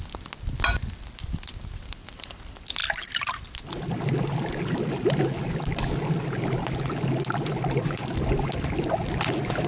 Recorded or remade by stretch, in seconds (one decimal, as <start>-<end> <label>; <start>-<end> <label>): 0.0-9.7 recorded